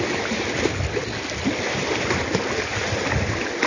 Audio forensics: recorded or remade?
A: recorded